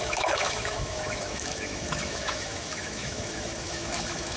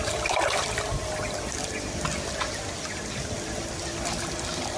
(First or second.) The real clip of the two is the second